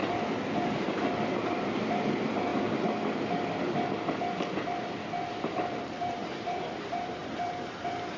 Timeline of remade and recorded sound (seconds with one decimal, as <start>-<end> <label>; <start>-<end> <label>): 0.0-1.5 recorded; 1.5-2.5 remade; 2.5-5.5 recorded; 5.5-8.2 remade